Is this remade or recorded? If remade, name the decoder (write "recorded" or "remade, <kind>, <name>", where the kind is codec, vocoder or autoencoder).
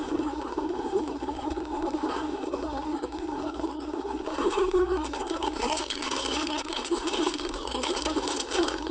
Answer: remade, codec, SNAC